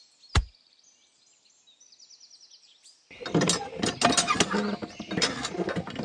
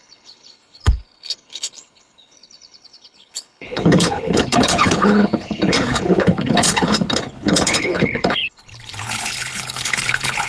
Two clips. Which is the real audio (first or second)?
first